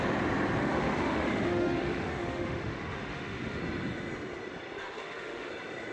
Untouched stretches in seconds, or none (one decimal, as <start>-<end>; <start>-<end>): 0.0-0.6; 3.6-4.8; 5.5-5.9